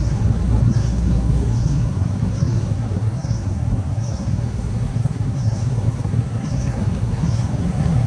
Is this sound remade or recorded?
remade